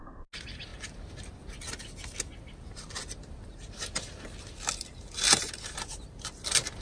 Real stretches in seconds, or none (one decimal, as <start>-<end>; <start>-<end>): 0.0-6.8